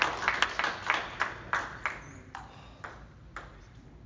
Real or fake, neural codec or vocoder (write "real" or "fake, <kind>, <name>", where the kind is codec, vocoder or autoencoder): real